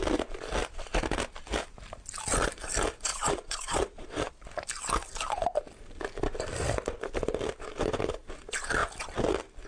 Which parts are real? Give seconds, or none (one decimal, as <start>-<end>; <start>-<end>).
0.0-3.1; 4.3-9.7

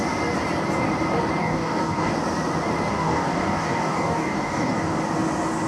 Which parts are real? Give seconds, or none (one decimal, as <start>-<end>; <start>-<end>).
0.0-1.4; 2.1-2.9; 5.0-5.7